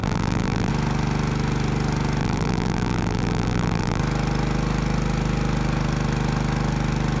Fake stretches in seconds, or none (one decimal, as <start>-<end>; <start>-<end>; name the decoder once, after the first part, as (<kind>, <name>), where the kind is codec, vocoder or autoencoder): 0.0-0.7 (vocoder, BigVGAN v2); 2.2-4.0